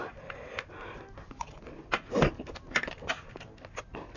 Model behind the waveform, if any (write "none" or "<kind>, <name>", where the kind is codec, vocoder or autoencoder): none